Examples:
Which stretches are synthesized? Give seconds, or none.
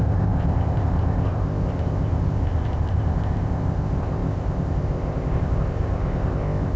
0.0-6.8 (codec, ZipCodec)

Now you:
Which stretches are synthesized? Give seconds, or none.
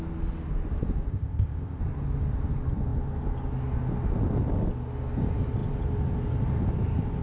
1.1-1.8 (codec, ZipCodec)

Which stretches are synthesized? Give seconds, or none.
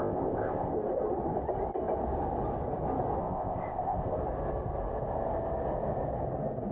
0.0-0.7 (codec, ZipCodec); 3.2-4.2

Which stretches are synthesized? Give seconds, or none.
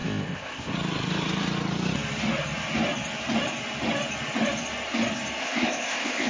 0.0-0.7 (codec, ZipCodec); 5.4-6.3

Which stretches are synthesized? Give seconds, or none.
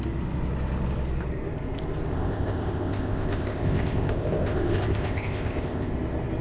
2.1-5.9 (codec, ZipCodec)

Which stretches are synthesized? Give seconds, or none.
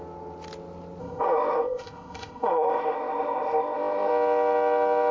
1.0-4.1 (codec, ZipCodec)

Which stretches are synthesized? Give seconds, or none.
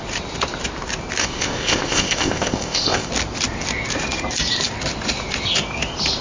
1.2-3.1 (codec, ZipCodec)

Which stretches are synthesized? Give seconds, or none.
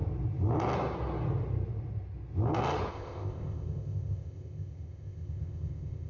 2.9-6.1 (codec, ZipCodec)